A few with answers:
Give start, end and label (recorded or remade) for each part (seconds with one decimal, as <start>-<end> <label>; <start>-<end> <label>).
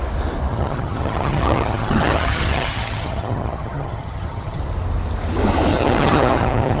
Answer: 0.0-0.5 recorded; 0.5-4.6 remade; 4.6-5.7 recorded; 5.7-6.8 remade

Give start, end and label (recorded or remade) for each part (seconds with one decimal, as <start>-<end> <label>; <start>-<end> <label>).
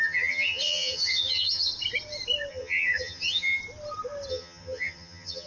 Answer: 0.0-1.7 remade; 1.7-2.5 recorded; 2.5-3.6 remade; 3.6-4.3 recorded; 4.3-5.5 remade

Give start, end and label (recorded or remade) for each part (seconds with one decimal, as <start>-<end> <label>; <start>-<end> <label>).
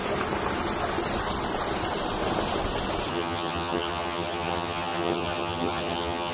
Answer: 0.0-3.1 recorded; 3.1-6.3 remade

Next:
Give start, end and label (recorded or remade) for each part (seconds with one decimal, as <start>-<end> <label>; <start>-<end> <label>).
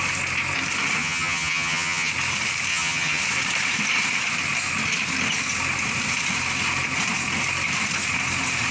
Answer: 0.0-1.0 recorded; 1.0-2.1 remade; 2.1-2.7 recorded; 2.7-3.2 remade; 3.2-8.7 recorded